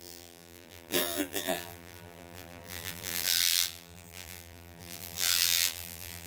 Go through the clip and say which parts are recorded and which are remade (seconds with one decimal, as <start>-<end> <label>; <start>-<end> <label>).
0.0-6.3 remade